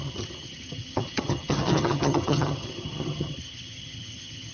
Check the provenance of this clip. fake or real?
fake